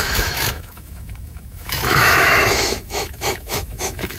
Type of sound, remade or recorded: remade